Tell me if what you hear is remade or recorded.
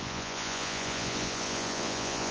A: remade